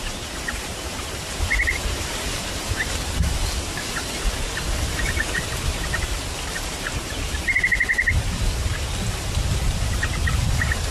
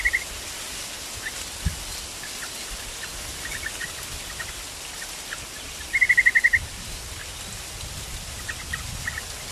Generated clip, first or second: first